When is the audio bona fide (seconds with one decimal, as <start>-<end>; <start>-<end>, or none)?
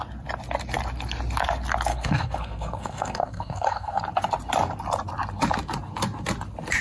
0.0-1.9; 4.0-6.8